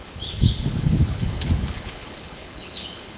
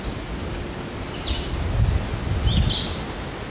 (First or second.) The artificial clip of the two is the first